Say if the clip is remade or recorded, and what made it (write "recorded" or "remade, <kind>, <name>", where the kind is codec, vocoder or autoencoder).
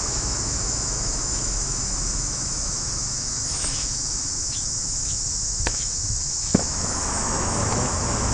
remade, autoencoder, DAC-VAE